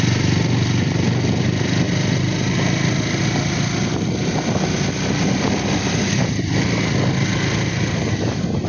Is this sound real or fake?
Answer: real